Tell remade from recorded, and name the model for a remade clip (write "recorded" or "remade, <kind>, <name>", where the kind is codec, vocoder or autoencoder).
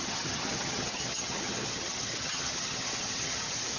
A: remade, vocoder, HiFi-GAN